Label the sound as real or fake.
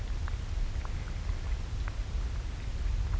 real